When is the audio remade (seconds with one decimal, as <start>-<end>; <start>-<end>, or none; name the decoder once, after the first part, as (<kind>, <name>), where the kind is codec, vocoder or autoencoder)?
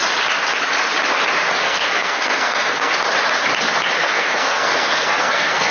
1.6-2.9 (codec, SNAC); 4.0-5.7